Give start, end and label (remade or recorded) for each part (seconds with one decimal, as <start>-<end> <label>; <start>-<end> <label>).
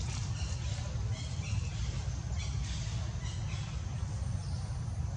0.0-5.2 recorded